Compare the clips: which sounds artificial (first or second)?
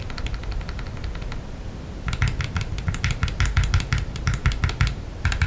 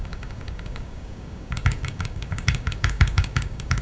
second